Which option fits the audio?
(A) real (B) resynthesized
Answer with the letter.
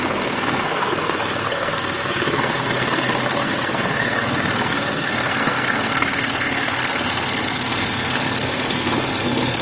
B